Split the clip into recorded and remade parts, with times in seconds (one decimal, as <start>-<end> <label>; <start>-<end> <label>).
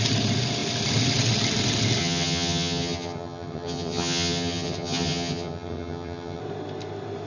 0.0-2.0 recorded; 2.0-6.4 remade; 6.4-7.3 recorded